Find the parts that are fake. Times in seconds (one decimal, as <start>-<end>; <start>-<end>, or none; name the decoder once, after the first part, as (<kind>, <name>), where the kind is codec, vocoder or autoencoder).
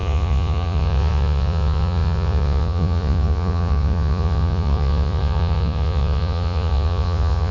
0.0-7.5 (vocoder, Vocos)